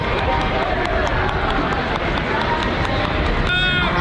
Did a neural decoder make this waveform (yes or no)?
no